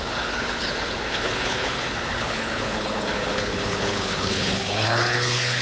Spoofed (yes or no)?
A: yes